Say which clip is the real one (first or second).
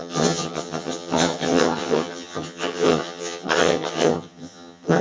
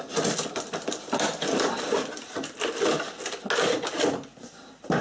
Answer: second